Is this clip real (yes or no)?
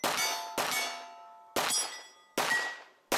yes